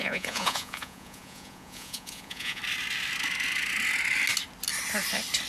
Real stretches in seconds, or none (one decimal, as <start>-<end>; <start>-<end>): 2.6-5.5